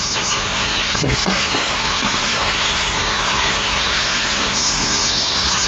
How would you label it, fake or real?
fake